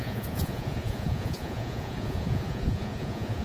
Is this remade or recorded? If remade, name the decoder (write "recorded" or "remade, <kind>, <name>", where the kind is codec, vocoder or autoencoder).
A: remade, vocoder, Vocos